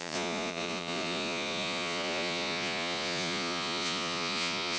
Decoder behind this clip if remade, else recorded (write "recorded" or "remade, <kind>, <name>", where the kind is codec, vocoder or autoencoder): remade, vocoder, Vocos